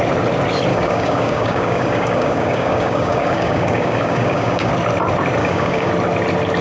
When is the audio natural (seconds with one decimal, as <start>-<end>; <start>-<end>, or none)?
0.0-0.7; 4.7-5.4; 5.9-6.6